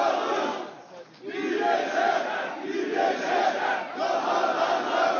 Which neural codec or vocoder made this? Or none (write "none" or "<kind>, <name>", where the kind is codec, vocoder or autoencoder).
none